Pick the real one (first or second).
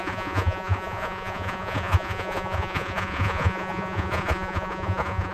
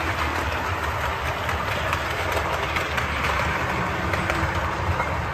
second